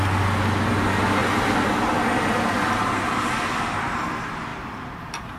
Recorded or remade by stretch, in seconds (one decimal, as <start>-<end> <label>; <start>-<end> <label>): 0.0-5.4 recorded